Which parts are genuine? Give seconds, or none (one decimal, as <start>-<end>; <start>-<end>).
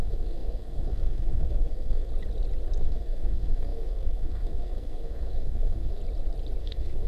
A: 2.1-2.8; 6.0-6.6